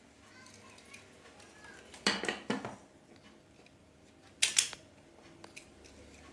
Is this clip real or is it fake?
real